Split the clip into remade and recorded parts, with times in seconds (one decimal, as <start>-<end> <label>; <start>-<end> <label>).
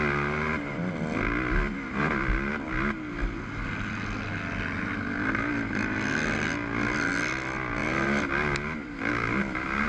0.0-9.9 recorded